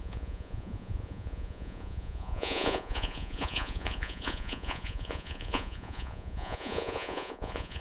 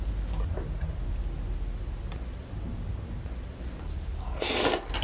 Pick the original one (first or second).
second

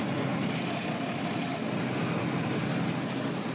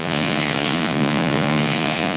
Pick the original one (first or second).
first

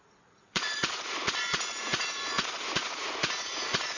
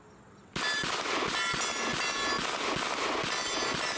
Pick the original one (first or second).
second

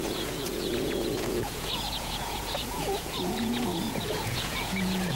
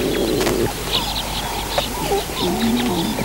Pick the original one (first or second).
second